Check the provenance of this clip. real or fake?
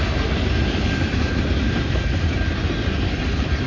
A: real